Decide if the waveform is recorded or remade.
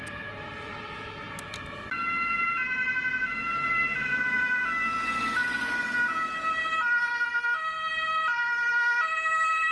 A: recorded